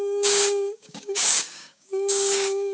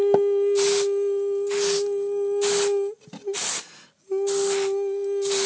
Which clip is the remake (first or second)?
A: first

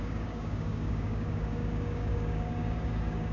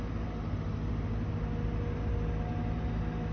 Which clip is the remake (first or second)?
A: first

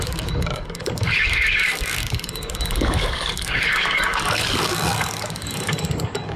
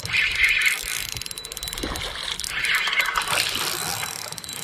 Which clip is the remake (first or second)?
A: first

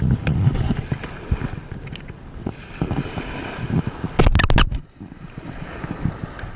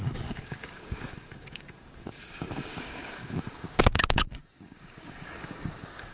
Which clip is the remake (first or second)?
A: second